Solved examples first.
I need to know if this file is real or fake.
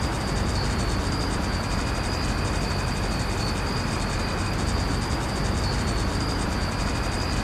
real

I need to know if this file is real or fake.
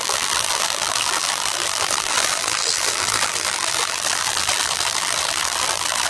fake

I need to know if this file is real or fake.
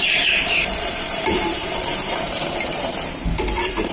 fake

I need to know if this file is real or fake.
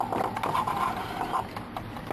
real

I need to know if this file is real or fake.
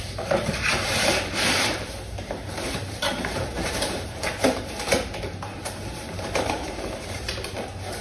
fake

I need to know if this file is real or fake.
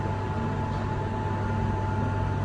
real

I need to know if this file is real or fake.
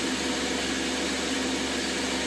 real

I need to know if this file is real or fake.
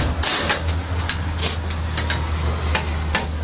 real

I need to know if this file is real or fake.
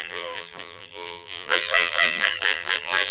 fake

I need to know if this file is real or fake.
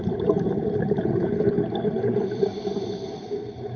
fake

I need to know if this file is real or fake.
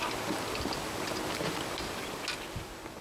real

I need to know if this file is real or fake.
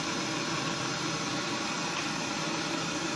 fake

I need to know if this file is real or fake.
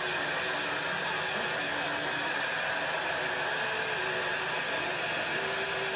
real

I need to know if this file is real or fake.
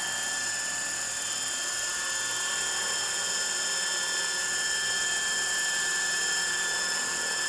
real